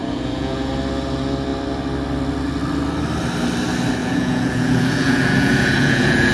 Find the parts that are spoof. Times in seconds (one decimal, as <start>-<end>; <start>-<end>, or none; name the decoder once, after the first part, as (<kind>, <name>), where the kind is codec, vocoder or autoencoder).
0.0-0.7 (vocoder, Vocos); 4.0-6.3

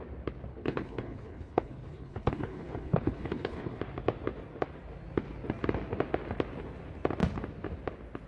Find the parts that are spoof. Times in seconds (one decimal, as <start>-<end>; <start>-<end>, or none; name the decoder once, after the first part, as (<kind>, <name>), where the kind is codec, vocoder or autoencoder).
0.5-3.8 (codec, HILCodec)

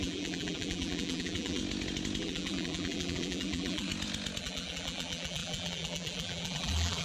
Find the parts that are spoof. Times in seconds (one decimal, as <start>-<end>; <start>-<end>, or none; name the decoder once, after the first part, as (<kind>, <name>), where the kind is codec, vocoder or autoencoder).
0.0-1.6 (vocoder, BigVGAN v2); 2.2-3.9; 4.4-7.0

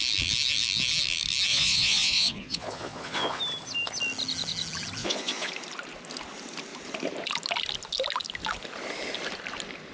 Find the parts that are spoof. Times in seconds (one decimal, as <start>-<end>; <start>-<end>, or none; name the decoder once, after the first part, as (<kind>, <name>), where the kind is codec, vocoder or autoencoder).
1.5-3.4 (vocoder, Vocos); 5.0-5.5

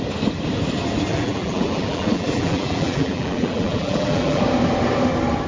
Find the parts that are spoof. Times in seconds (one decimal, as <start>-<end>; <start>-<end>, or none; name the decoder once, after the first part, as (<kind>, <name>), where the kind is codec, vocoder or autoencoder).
1.1-4.4 (vocoder, BigVGAN v2)

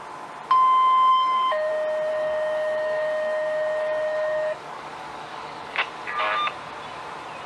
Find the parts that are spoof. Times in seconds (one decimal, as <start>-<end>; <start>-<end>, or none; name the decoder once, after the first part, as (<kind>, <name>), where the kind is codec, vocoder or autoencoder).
1.1-1.7 (codec, DAC); 2.1-5.8

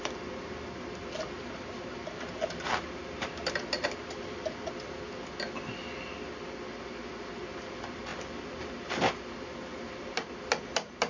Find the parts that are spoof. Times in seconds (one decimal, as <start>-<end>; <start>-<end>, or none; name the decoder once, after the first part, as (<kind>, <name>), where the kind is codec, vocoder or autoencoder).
none